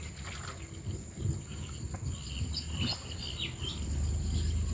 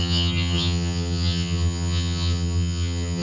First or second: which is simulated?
second